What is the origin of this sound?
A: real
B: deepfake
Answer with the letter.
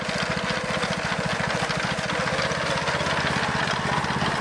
A